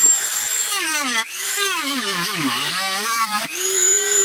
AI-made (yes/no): yes